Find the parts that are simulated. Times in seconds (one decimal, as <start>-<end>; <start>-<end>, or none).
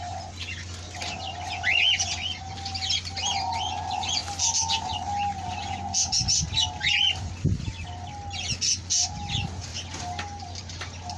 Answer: none